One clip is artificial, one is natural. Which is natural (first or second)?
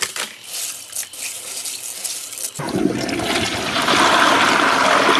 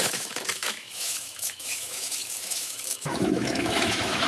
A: first